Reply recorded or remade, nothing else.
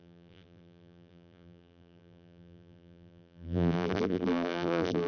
remade